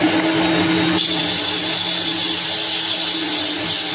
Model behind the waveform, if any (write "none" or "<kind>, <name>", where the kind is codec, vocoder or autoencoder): none